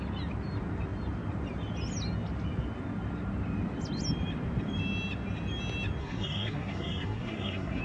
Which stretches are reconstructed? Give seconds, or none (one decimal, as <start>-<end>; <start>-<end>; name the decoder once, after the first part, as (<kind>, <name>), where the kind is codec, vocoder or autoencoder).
6.0-7.8 (codec, SNAC)